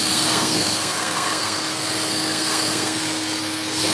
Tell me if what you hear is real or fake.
fake